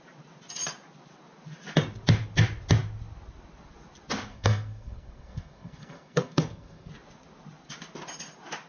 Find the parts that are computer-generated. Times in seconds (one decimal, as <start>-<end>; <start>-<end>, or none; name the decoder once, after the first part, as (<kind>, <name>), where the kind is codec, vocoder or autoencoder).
4.3-6.9 (codec, SNAC)